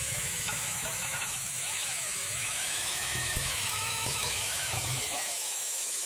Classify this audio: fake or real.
fake